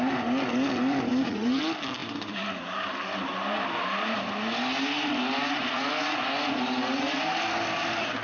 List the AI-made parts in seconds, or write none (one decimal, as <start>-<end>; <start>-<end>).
1.1-1.6